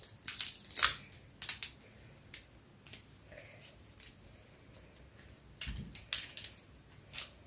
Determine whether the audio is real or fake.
real